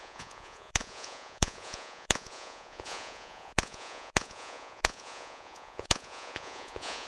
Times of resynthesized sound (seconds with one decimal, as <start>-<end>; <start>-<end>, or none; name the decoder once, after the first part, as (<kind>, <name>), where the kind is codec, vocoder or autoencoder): 0.0-7.1 (vocoder, Vocos)